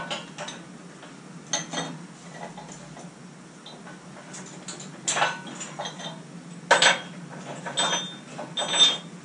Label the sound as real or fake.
real